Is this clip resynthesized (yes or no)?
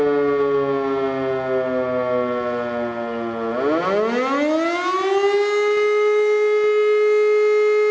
no